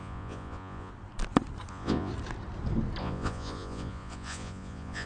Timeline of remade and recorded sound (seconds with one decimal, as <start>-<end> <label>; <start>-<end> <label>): 0.0-0.9 remade; 0.9-1.7 recorded; 1.7-2.1 remade; 2.1-3.0 recorded; 3.0-5.1 remade